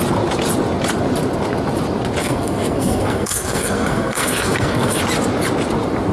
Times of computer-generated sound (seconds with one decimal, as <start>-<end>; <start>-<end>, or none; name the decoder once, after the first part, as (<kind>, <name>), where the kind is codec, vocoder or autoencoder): 2.2-5.0 (codec, SNAC)